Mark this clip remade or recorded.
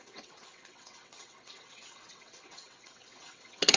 remade